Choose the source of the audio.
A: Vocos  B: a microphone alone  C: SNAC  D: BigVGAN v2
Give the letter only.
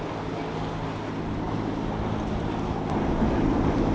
B